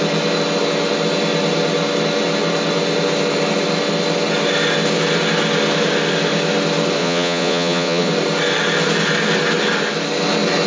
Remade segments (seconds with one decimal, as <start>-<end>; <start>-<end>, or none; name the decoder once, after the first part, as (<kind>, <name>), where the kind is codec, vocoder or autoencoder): 7.0-8.1 (vocoder, Vocos)

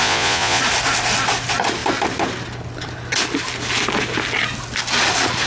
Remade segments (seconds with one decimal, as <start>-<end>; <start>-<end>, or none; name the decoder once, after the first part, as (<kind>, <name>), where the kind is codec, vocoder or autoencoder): 0.0-0.6 (vocoder, Vocos)